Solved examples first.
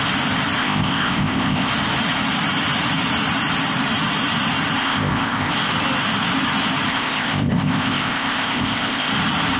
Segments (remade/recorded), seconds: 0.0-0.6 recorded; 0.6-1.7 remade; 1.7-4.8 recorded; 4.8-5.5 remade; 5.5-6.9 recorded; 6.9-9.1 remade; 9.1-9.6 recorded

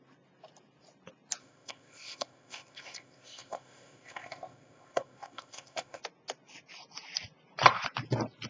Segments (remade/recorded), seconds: 0.0-1.4 recorded; 1.4-6.0 remade; 6.0-8.5 recorded